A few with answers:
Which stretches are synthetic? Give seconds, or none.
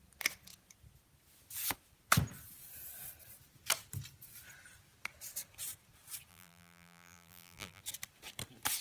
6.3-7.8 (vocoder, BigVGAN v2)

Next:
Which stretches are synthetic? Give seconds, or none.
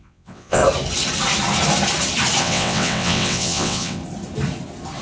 0.0-0.6 (vocoder, WaveNeXt); 2.4-4.0